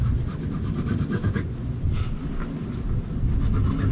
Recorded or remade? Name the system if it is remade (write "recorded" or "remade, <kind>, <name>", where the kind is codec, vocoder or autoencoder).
recorded